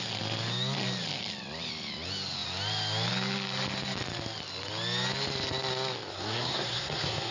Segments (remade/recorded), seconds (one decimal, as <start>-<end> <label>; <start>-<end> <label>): 0.0-6.1 recorded; 6.1-7.3 remade